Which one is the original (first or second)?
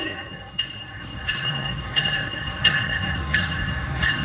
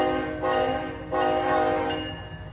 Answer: second